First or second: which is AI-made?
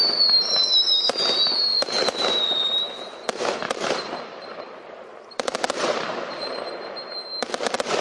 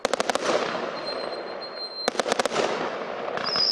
first